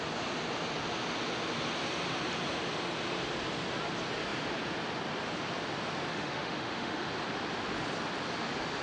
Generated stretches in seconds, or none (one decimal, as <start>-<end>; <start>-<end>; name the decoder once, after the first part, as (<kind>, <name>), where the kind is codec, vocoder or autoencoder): 6.1-7.1 (autoencoder, DAC-VAE)